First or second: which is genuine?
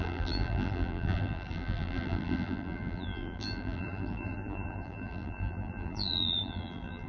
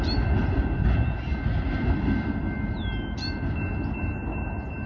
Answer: second